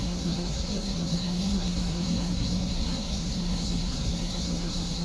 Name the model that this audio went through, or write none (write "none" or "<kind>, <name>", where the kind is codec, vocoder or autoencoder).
codec, SNAC